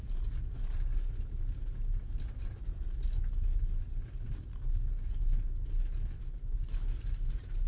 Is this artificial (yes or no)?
no